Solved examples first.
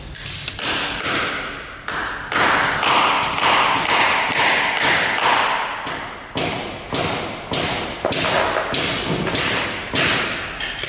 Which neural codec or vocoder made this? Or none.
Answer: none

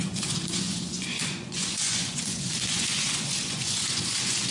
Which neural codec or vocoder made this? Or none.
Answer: vocoder, Vocos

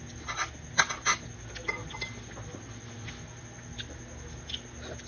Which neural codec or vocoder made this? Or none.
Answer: none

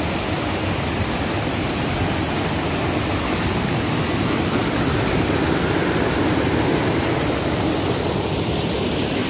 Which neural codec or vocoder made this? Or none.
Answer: none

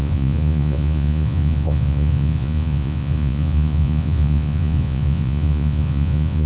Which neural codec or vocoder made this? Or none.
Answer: vocoder, Vocos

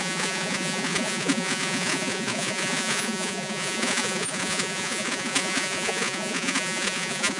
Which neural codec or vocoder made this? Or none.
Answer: vocoder, Vocos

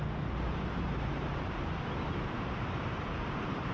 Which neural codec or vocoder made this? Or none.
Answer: none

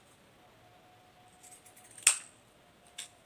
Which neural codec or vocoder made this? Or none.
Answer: none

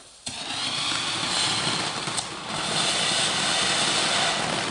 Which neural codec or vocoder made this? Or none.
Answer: none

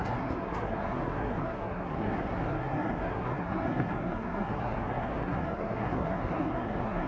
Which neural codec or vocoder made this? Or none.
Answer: codec, SNAC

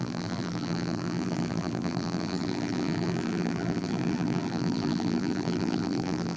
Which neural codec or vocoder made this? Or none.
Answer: vocoder, BigVGAN v2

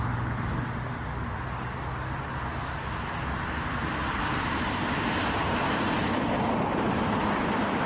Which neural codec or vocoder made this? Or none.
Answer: none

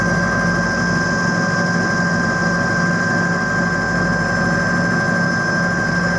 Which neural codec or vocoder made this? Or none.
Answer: none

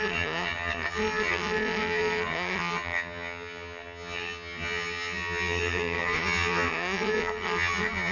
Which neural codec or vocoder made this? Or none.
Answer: vocoder, HiFi-GAN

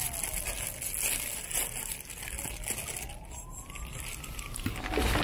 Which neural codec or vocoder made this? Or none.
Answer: none